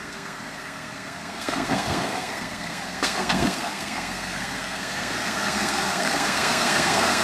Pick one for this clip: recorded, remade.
remade